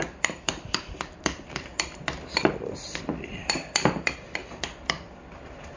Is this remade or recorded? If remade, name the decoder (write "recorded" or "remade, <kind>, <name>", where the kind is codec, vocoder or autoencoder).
remade, vocoder, BigVGAN v2